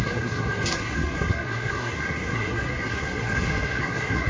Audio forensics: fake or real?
fake